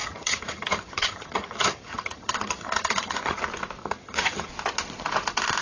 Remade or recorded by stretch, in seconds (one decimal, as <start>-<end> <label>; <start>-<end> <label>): 0.0-3.4 remade; 3.4-3.8 recorded; 3.8-4.5 remade; 4.5-5.6 recorded